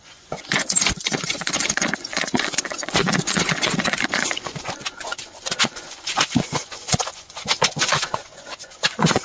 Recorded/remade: remade